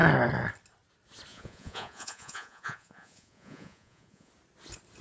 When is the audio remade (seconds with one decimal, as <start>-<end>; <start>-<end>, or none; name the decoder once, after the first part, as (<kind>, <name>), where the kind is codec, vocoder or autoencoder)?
1.3-4.3 (vocoder, Vocos)